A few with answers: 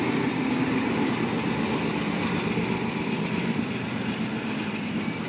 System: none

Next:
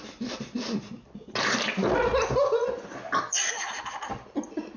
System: none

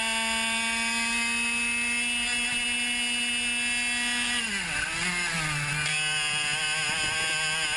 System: none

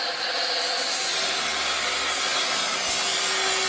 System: none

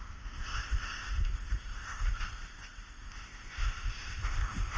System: codec, ZipCodec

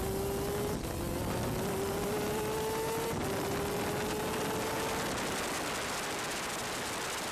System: none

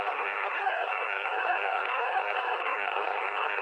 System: codec, SNAC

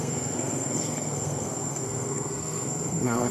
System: codec, SNAC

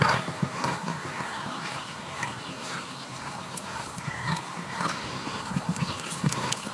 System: codec, SNAC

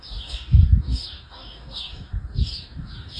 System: codec, DAC